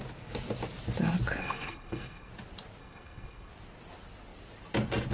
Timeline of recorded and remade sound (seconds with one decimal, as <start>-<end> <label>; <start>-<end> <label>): 0.0-1.4 recorded; 1.4-2.3 remade; 2.3-2.8 recorded; 2.8-3.5 remade; 3.5-5.1 recorded